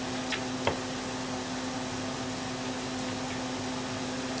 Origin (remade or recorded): recorded